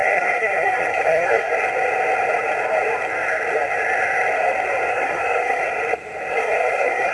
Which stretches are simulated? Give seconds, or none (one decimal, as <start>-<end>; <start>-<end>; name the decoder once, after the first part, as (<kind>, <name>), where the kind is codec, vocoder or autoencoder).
0.0-1.5 (codec, SNAC); 4.9-5.6; 6.3-7.1